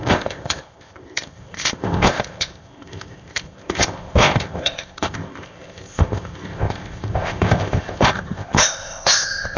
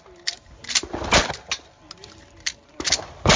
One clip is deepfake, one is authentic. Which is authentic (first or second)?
second